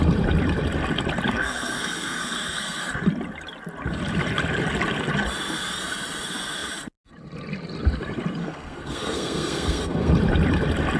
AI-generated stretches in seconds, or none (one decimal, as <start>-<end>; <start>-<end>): 1.3-2.8; 8.4-10.1